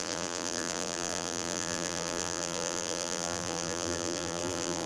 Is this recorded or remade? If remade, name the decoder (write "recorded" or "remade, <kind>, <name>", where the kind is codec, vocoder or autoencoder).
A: remade, vocoder, BigVGAN v2